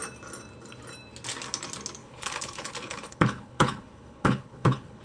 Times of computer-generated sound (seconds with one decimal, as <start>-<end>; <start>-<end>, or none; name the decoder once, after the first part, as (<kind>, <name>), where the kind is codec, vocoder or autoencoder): 2.0-5.0 (codec, HILCodec)